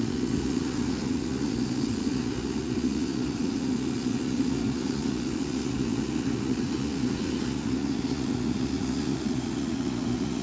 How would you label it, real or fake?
fake